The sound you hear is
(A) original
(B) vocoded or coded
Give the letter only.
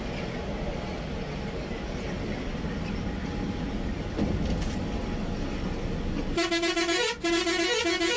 A